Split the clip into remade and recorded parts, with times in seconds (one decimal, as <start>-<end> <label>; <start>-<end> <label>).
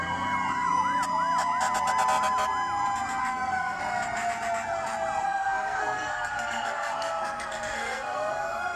0.0-3.2 recorded; 3.2-3.8 remade; 3.8-5.2 recorded; 5.2-8.8 remade